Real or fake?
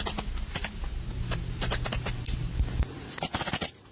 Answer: real